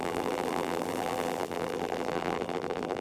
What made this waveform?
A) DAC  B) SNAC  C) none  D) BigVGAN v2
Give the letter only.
D